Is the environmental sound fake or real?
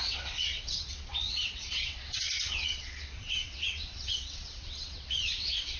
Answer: fake